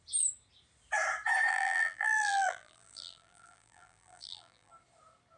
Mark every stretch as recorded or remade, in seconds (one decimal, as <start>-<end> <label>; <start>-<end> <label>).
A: 0.0-1.5 recorded; 1.5-4.7 remade; 4.7-5.4 recorded